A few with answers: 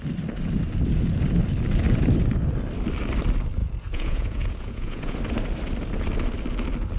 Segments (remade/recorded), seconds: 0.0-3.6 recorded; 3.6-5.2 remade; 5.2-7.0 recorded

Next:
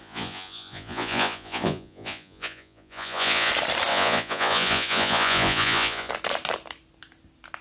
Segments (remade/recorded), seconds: 0.0-3.5 remade; 3.5-3.9 recorded; 3.9-6.1 remade; 6.1-7.6 recorded

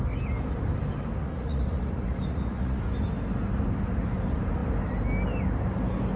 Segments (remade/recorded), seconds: 0.0-1.2 recorded; 1.2-2.8 remade; 2.8-6.2 recorded

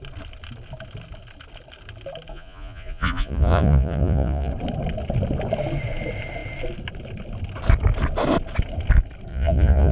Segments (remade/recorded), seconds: 0.0-2.3 recorded; 2.3-4.5 remade; 4.5-9.3 recorded; 9.3-9.9 remade